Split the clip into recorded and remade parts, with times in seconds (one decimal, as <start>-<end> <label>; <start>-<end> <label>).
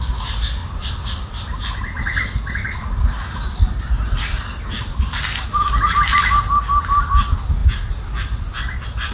0.0-0.6 recorded; 0.6-1.6 remade; 1.6-9.1 recorded